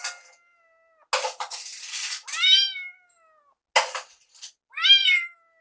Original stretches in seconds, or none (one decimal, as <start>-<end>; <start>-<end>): 0.0-5.6